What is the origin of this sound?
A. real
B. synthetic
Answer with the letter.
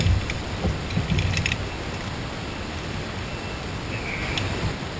A